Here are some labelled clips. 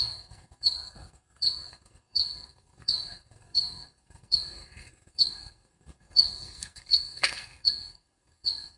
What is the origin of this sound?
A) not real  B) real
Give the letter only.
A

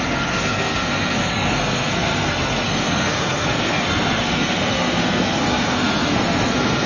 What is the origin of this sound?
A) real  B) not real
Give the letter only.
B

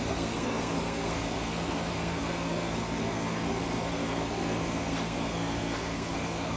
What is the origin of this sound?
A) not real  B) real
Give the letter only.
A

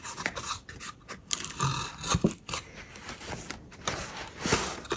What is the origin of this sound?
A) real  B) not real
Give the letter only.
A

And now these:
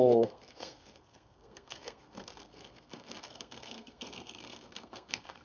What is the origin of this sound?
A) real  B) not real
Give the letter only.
B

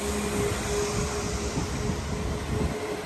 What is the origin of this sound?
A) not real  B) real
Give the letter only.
B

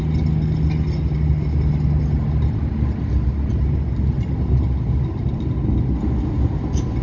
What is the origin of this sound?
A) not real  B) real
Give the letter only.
B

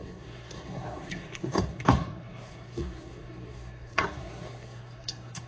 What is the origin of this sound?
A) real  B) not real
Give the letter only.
B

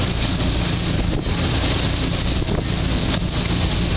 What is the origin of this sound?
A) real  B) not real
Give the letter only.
A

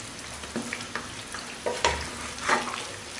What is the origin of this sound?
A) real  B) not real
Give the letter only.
A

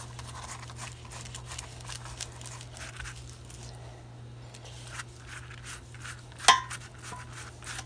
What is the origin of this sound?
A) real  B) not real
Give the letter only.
A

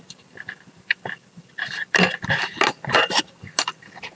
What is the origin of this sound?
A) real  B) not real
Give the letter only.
A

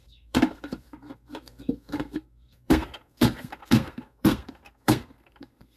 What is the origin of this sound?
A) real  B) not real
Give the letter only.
B